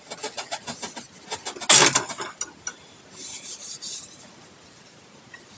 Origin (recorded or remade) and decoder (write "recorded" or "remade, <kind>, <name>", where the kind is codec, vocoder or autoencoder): recorded